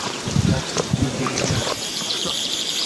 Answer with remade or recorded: remade